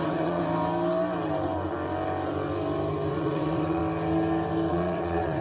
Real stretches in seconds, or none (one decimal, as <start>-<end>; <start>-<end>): 0.4-3.1; 3.8-4.7

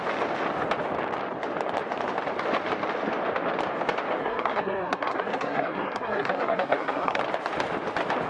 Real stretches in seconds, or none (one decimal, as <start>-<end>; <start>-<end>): 0.0-4.2; 7.2-8.3

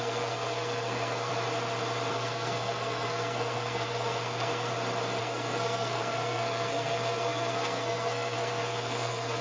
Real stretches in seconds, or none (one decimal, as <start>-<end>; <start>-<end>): 1.3-2.1; 4.7-5.2

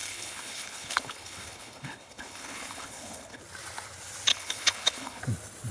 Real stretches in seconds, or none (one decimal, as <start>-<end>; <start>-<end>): 3.4-4.3; 5.2-5.7

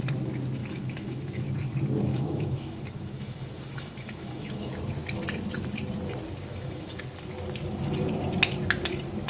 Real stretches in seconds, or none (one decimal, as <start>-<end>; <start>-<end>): 0.0-0.6; 1.4-2.1; 4.7-6.5; 7.0-9.3